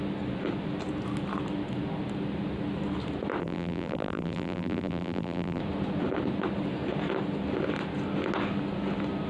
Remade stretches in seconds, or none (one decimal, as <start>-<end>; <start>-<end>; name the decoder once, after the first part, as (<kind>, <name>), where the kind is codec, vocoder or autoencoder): 3.4-5.6 (vocoder, BigVGAN v2)